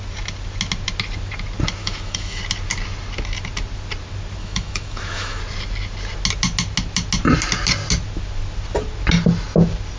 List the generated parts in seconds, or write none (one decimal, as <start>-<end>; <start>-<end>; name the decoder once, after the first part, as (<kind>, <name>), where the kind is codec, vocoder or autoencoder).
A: 1.8-2.4 (autoencoder, DAC-VAE); 4.4-5.4